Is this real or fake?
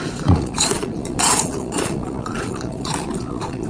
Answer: fake